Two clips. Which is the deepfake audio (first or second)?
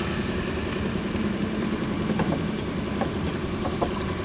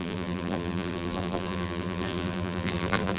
second